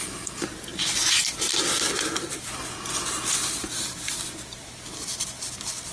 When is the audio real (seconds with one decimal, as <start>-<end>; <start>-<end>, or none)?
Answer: 0.0-5.9